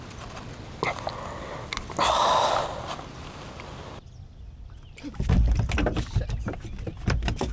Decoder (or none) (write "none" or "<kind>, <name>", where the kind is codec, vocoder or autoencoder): none